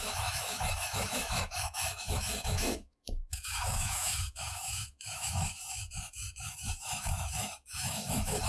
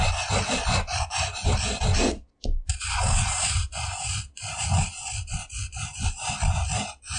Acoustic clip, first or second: second